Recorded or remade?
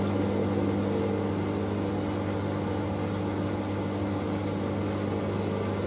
recorded